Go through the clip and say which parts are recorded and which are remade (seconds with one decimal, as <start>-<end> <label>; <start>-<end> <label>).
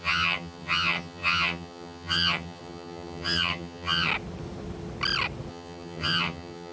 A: 0.0-4.1 remade; 4.1-5.5 recorded; 5.5-6.7 remade